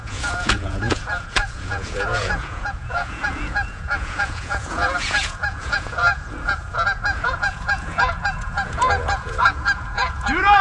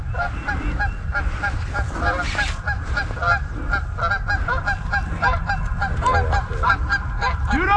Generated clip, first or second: first